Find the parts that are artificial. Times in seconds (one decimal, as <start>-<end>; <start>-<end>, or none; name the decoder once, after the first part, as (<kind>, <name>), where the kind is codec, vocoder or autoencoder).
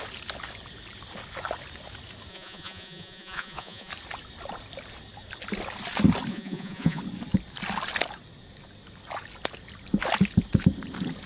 2.3-3.9 (vocoder, Vocos); 6.3-7.0